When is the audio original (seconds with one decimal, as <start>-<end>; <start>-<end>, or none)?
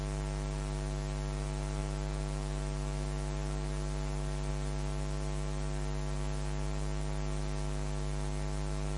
0.0-9.0